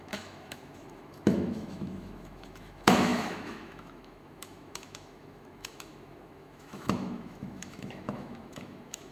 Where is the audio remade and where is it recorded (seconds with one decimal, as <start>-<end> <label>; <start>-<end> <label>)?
0.0-9.1 remade